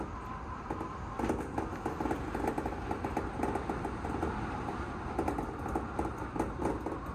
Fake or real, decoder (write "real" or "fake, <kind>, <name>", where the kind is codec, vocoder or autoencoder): real